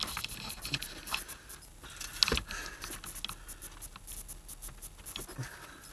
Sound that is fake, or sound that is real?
real